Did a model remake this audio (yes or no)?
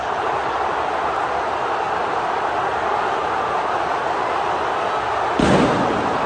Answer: no